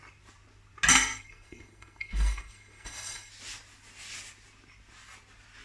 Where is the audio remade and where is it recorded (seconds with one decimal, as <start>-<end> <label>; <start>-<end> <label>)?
0.0-0.9 recorded; 0.9-3.3 remade; 3.3-5.6 recorded